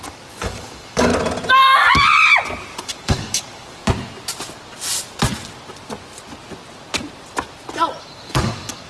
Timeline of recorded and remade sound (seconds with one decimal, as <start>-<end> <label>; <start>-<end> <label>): 0.0-1.1 remade; 1.1-2.8 recorded; 2.8-3.8 remade; 3.8-8.0 recorded; 8.0-8.9 remade